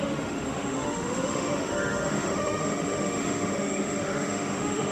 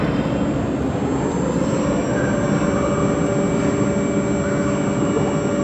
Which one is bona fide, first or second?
second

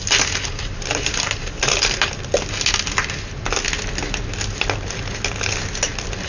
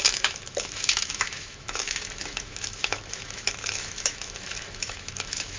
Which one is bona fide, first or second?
first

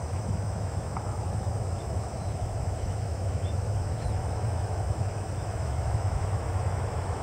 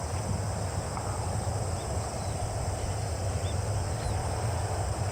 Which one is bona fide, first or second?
second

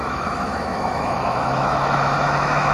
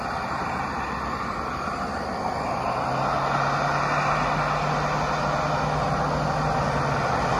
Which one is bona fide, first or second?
second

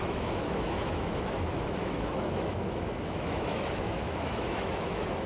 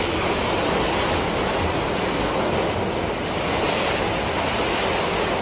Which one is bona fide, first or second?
second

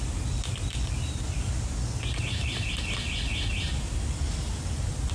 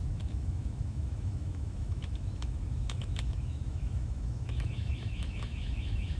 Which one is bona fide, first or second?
first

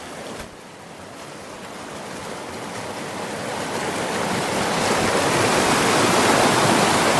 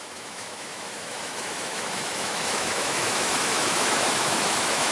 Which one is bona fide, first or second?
first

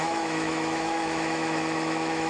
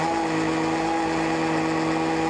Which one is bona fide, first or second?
second